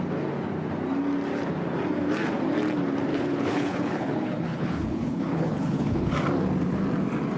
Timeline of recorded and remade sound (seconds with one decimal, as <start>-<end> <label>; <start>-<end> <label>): 0.0-3.1 recorded; 3.1-6.1 remade; 6.1-7.4 recorded